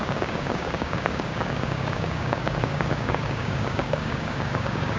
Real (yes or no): no